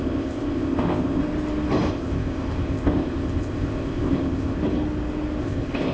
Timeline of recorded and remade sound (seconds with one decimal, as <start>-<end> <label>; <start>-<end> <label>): 0.0-1.2 remade; 1.2-1.9 recorded; 1.9-4.6 remade; 4.6-5.4 recorded; 5.4-5.9 remade